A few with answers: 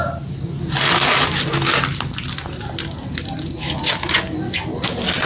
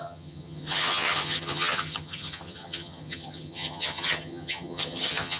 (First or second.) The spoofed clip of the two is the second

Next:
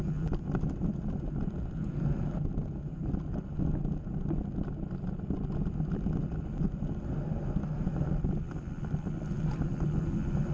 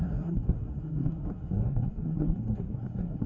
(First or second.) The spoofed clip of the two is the second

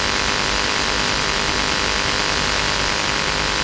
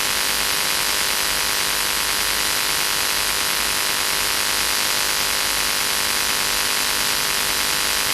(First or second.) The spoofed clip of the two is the first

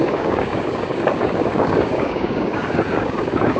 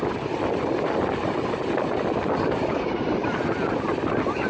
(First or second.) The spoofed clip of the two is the first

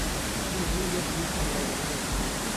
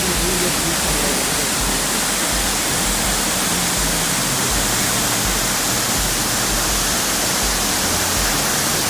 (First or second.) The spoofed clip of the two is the first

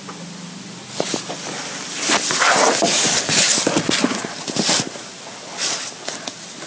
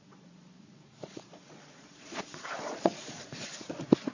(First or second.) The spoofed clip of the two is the second